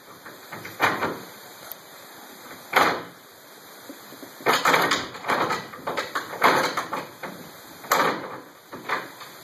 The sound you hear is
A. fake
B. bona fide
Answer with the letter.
A